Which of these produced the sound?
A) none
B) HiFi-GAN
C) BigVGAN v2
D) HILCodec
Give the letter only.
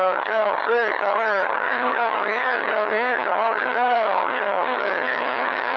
B